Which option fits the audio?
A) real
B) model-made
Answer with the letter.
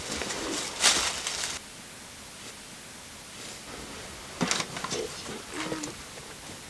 A